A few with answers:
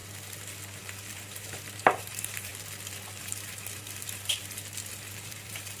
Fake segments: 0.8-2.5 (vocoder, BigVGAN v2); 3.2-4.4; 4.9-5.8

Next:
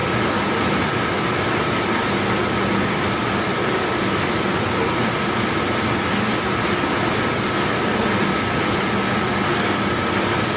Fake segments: 0.0-1.6 (vocoder, BigVGAN v2)

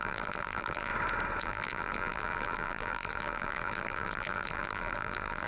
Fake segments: 0.0-0.9 (vocoder, BigVGAN v2); 1.4-5.5